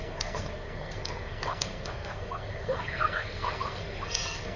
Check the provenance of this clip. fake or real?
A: fake